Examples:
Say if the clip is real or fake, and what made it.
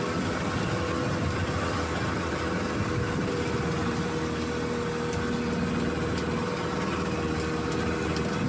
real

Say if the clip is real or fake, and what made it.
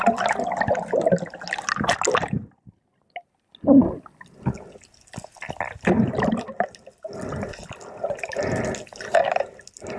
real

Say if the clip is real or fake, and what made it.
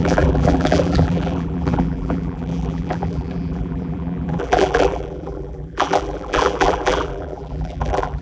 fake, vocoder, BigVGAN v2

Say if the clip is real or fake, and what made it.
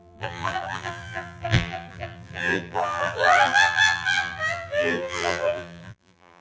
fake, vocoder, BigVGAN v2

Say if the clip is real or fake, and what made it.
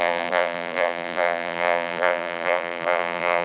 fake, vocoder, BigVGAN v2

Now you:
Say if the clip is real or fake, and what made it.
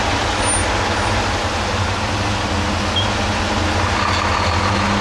real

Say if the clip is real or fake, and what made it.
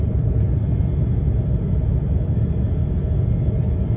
real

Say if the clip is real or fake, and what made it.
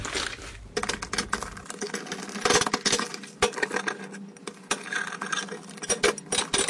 real